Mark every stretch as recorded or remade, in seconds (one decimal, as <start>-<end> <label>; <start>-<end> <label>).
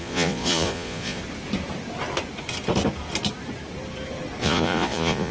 0.0-1.2 remade; 1.2-4.4 recorded; 4.4-5.3 remade